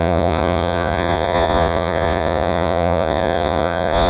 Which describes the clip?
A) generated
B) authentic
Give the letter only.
A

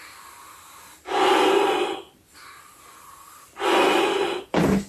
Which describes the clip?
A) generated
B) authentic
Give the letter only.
B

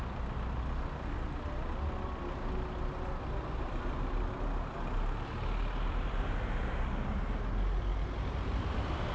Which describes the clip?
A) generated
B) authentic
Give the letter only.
B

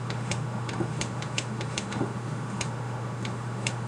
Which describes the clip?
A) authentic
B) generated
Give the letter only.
B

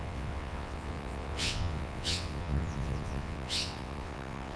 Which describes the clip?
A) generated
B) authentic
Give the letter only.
A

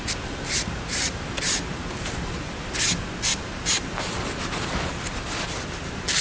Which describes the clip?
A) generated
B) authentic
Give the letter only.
B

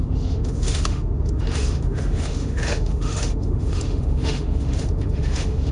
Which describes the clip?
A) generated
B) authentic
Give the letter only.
A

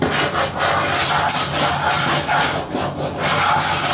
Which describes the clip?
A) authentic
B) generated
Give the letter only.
A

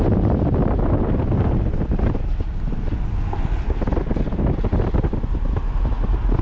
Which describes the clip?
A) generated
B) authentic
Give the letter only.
B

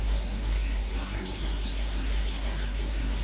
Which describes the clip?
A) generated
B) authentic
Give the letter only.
A